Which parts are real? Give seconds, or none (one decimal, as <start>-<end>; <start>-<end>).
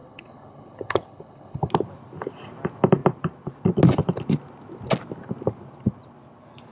1.7-6.7